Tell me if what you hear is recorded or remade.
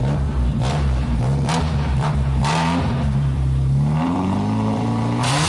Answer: remade